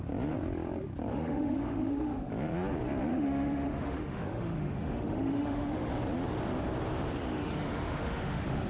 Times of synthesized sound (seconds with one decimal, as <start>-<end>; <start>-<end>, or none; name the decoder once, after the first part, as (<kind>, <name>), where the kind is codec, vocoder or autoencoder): 1.1-2.3 (autoencoder, DAC-VAE); 3.1-5.9; 7.3-8.7